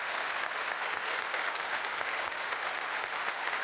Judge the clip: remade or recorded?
remade